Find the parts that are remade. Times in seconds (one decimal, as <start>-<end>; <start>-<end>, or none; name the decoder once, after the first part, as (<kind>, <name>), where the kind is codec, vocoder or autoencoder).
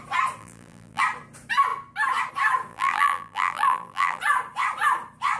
0.4-1.0 (vocoder, BigVGAN v2); 2.7-4.2